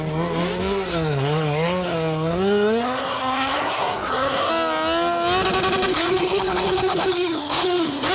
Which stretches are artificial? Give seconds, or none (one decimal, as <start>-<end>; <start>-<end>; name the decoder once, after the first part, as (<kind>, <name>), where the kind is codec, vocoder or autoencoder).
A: 0.9-4.5 (codec, SNAC); 5.9-8.1

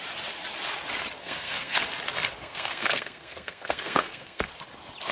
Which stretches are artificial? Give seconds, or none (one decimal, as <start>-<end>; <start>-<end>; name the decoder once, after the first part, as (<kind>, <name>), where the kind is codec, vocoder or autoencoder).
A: 1.2-1.8 (codec, SNAC); 2.4-4.5

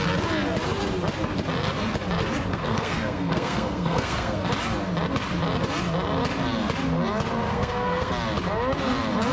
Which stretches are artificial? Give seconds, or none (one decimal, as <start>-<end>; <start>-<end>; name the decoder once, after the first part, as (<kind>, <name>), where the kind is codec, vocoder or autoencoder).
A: 2.5-4.5 (codec, SNAC); 7.5-8.1

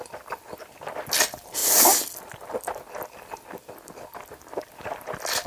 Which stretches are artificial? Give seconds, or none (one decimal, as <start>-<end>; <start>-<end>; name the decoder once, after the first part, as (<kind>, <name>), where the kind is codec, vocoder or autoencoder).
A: none